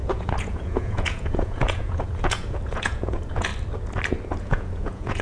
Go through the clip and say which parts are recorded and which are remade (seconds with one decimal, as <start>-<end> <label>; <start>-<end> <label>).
0.0-3.5 remade; 3.5-4.4 recorded; 4.4-5.2 remade